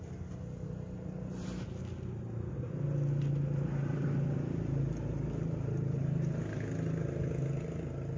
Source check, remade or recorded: recorded